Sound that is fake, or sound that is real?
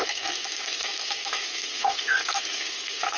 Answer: fake